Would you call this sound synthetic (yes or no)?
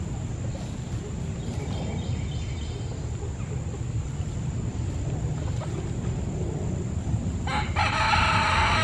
no